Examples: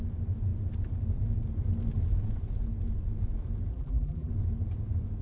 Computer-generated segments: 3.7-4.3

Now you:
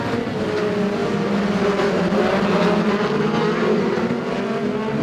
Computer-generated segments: none

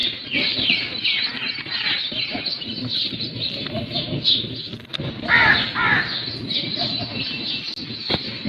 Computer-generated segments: none

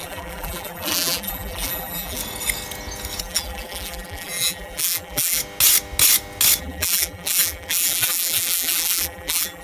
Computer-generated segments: 0.0-2.2; 3.2-5.4; 6.6-9.6

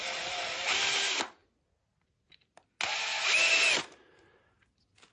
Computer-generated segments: none

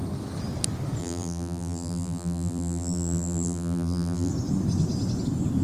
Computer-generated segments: 1.0-4.3

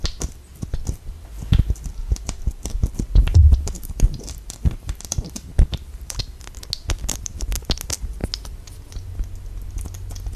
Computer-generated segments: 1.9-6.2

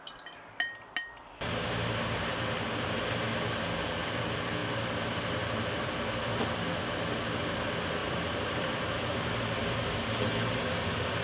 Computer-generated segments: 8.0-9.3